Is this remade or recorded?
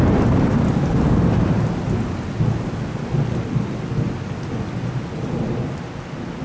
recorded